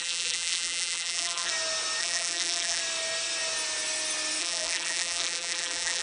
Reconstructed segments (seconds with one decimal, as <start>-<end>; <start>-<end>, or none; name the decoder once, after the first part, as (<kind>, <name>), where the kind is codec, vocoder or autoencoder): 0.0-1.5 (vocoder, BigVGAN v2); 2.0-2.8; 4.4-6.0